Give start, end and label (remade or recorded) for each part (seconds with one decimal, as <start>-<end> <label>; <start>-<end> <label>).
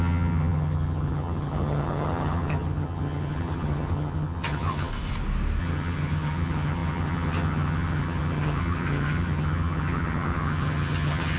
0.0-4.9 remade; 4.9-5.6 recorded; 5.6-11.4 remade